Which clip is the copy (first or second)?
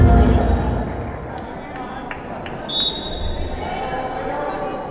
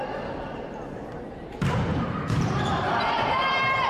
second